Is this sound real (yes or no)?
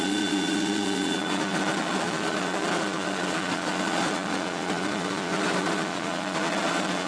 no